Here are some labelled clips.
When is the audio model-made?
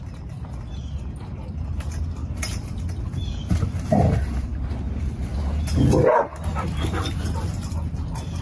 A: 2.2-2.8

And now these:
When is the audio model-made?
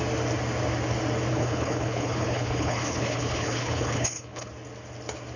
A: 1.3-4.5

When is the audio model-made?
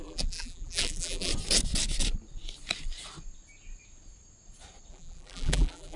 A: 0.0-1.3; 4.9-6.0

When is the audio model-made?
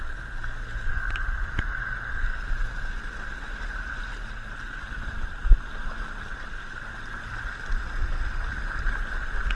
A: none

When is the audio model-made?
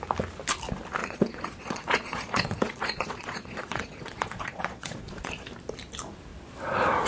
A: 1.0-5.3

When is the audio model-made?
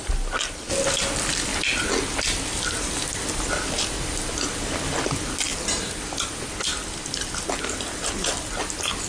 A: none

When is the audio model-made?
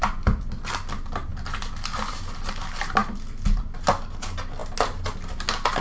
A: none